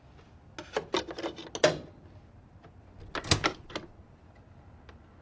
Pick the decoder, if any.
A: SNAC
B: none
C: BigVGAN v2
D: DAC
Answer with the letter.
B